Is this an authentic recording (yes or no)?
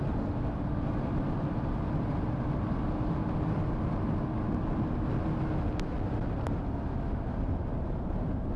yes